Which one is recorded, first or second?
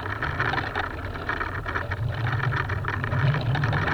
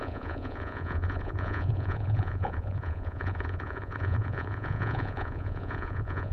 first